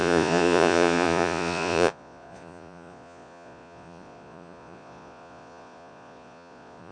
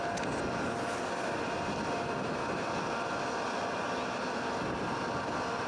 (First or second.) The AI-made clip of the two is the first